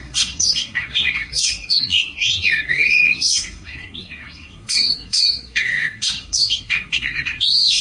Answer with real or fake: fake